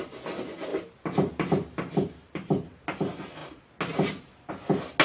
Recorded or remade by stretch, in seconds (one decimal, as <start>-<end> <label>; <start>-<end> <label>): 0.0-5.0 recorded